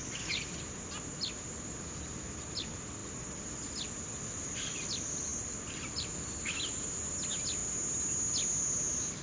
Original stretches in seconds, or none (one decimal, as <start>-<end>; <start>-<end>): 0.0-9.2